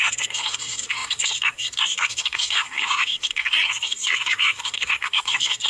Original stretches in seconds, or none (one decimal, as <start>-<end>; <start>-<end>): none